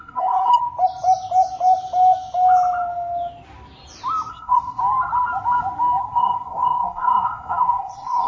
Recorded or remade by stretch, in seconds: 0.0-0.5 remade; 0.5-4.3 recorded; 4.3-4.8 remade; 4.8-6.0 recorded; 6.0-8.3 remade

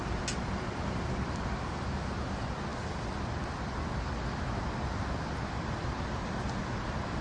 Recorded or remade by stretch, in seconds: 0.0-7.2 recorded

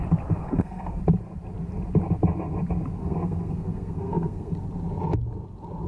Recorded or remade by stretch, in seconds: 0.0-0.4 recorded; 0.4-1.0 remade; 1.0-3.0 recorded; 3.0-4.5 remade; 4.5-5.9 recorded

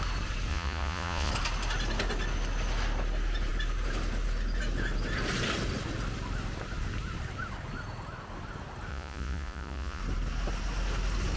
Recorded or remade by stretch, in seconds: 0.0-0.5 recorded; 0.5-1.3 remade; 1.3-8.9 recorded; 8.9-10.0 remade; 10.0-11.4 recorded

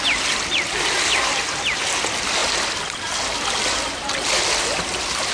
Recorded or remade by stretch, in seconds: 0.0-5.3 recorded

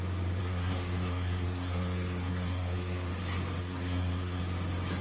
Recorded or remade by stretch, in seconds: 0.0-0.4 recorded; 0.4-3.1 remade; 3.1-3.6 recorded; 3.6-4.4 remade; 4.4-5.0 recorded